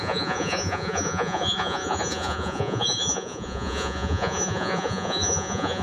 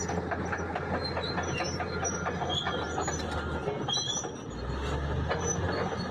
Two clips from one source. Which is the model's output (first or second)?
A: first